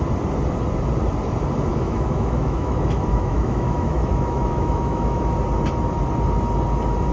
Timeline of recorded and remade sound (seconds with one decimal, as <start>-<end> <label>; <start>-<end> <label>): 0.0-1.7 recorded; 1.7-5.3 remade; 5.3-7.1 recorded